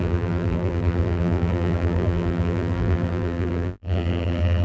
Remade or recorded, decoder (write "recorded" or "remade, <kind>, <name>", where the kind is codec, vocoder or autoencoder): remade, vocoder, BigVGAN v2